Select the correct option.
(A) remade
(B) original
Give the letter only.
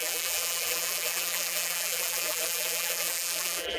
A